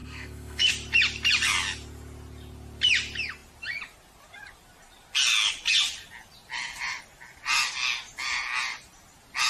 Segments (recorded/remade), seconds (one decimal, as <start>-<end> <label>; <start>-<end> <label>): 0.0-0.7 remade; 0.7-9.5 recorded